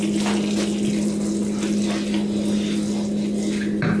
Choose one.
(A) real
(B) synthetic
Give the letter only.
A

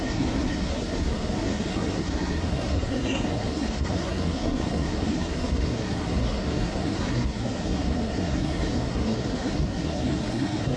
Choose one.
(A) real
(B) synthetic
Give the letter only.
B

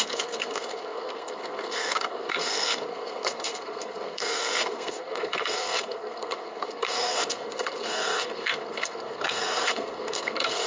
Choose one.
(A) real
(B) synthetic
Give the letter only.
B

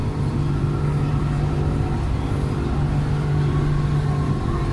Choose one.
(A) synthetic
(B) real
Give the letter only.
B